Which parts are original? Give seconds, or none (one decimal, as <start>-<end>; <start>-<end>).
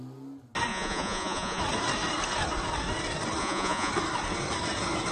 0.0-0.7; 1.6-3.4; 3.9-5.1